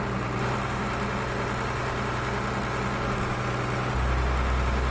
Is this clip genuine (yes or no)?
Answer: yes